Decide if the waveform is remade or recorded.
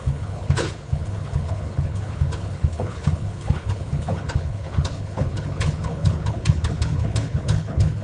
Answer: remade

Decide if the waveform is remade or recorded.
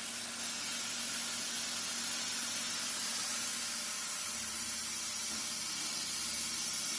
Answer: recorded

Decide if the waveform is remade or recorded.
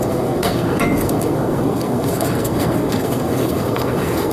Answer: remade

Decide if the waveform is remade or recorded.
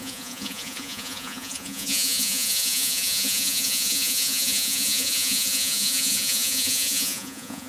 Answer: remade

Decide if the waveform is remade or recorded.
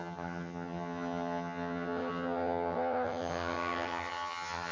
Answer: remade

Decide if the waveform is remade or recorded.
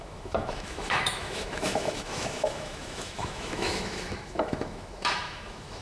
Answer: remade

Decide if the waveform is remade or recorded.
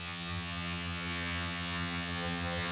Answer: remade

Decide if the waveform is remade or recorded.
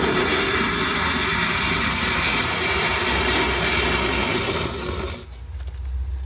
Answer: recorded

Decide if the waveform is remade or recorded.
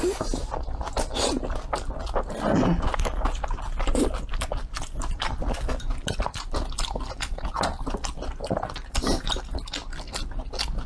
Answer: recorded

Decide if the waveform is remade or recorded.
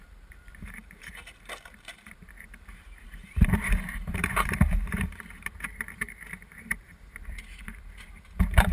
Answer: remade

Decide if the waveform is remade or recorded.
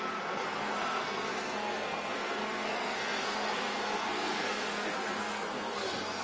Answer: remade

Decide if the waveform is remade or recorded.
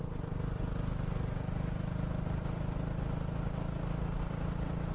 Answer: recorded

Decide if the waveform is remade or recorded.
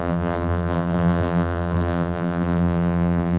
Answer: remade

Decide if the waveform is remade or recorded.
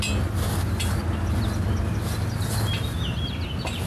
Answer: recorded